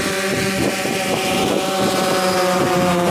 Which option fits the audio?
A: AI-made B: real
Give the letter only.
B